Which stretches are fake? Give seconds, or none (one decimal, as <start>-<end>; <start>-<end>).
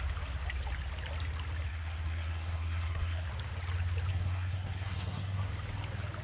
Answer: 1.7-3.3; 4.1-5.5